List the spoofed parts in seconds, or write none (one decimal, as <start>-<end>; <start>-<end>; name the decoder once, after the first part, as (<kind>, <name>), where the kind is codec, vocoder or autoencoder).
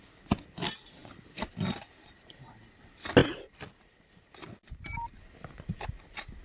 none